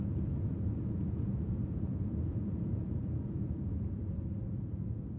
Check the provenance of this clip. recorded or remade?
remade